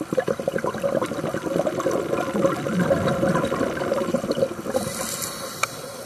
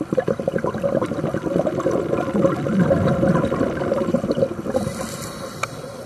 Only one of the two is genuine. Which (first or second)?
first